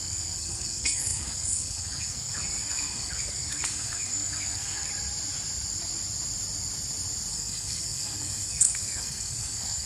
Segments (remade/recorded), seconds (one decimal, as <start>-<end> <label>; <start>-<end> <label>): 0.0-4.9 remade; 4.9-7.3 recorded; 7.3-9.9 remade